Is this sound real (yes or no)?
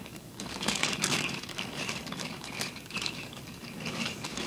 no